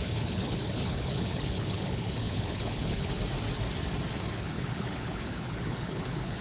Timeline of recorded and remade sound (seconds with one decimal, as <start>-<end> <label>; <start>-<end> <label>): 0.0-3.2 remade; 3.2-4.4 recorded; 4.4-6.4 remade